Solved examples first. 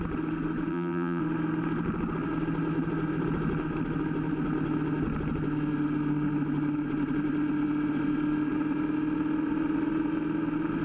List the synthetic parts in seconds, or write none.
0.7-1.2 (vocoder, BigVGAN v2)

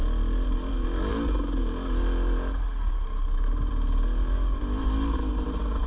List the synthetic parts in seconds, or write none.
none

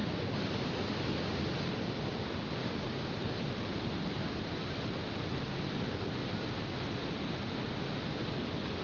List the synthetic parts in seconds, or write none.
none

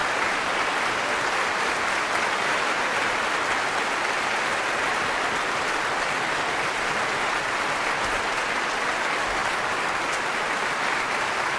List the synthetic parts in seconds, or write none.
none